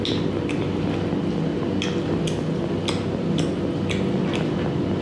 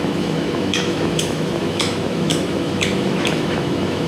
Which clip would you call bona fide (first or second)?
first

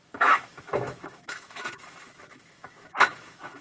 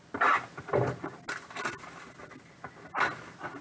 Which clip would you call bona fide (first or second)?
second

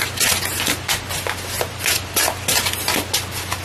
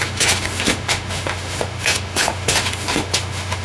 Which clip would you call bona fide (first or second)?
first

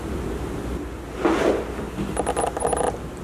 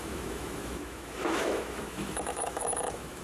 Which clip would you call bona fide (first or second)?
first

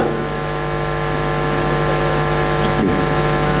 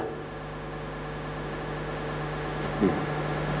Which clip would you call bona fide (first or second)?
first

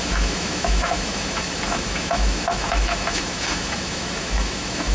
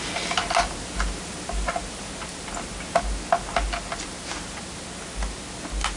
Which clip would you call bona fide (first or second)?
second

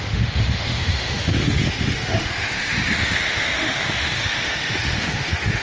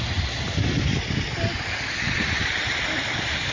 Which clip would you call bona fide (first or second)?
second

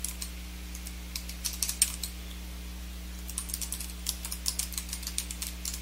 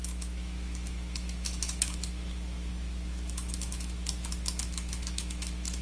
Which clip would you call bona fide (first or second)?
first